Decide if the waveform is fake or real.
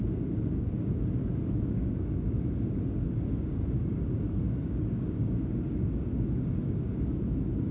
fake